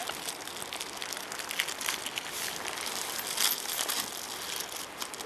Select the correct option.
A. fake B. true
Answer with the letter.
B